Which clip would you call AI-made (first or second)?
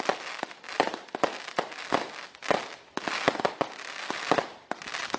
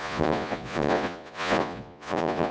second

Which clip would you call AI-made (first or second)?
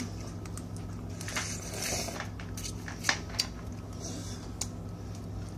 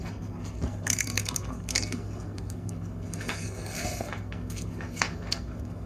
second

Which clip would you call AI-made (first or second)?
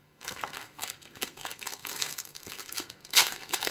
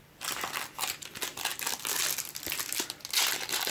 first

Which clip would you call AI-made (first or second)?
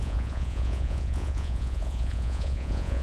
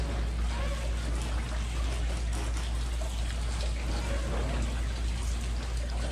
first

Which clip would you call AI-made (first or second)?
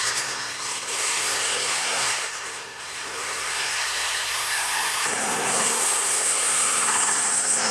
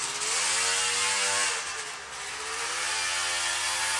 first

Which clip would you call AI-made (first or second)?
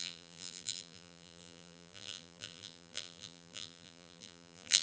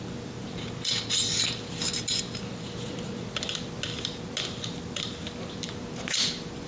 first